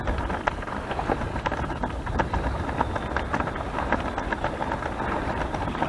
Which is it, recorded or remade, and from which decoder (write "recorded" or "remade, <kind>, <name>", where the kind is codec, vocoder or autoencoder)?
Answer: recorded